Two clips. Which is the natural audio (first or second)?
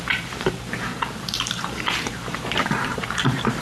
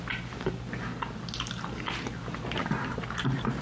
second